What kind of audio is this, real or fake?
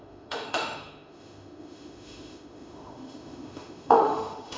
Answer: fake